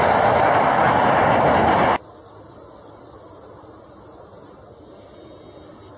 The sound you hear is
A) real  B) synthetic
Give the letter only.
A